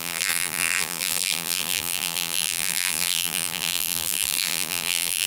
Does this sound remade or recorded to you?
remade